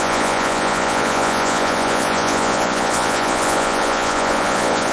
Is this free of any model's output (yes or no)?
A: no